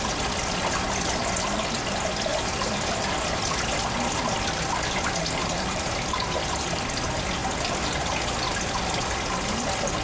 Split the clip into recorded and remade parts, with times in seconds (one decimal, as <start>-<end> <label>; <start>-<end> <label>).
0.0-2.3 recorded; 2.3-3.1 remade; 3.1-5.4 recorded; 5.4-6.8 remade; 6.8-10.0 recorded